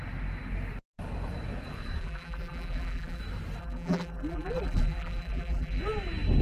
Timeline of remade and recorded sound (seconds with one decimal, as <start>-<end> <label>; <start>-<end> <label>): 0.0-2.0 recorded; 2.0-3.2 remade; 3.2-3.6 recorded; 3.6-5.8 remade; 5.8-6.4 recorded